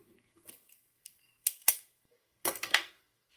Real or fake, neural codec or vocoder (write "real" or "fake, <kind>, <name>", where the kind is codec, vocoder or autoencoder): fake, codec, SNAC